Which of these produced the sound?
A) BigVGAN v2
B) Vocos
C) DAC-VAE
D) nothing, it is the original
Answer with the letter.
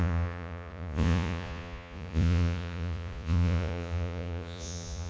B